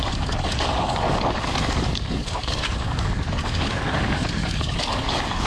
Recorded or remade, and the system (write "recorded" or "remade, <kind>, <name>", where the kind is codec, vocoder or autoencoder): remade, codec, DAC